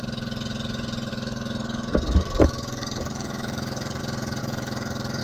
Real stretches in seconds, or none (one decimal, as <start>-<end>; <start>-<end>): 0.0-1.1; 4.0-4.4

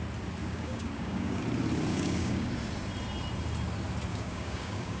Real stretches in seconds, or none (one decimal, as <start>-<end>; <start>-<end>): 0.0-0.4; 1.4-1.9; 2.5-4.1